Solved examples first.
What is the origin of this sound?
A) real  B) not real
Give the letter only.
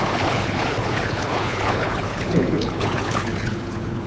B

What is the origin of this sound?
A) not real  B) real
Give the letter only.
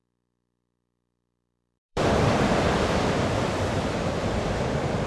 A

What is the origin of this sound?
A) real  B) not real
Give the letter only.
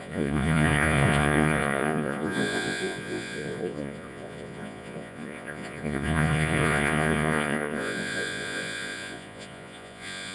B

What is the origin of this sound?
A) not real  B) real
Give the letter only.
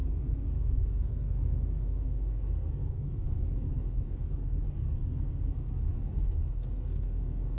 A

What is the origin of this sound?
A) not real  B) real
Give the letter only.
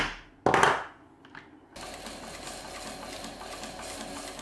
B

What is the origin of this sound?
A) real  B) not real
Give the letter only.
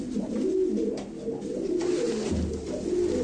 A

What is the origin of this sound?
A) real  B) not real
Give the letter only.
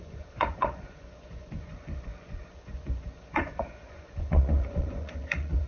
B